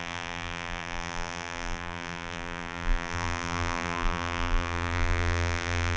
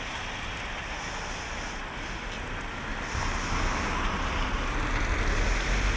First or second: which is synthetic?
first